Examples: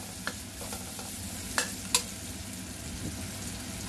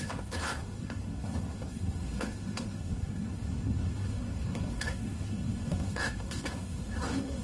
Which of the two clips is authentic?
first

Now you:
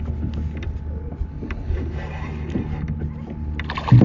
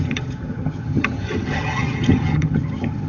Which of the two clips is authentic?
first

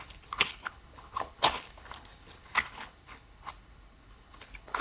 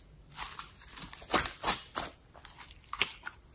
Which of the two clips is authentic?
second